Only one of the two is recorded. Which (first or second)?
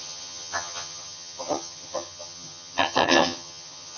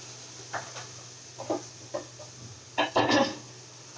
second